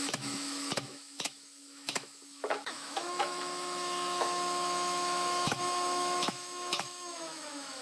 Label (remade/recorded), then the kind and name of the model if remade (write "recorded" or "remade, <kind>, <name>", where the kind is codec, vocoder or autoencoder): remade, autoencoder, DAC-VAE